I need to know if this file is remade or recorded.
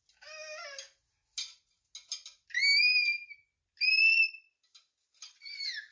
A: recorded